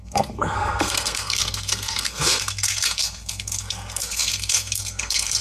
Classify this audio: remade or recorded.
remade